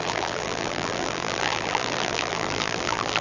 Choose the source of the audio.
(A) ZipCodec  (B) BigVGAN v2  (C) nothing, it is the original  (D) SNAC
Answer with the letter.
B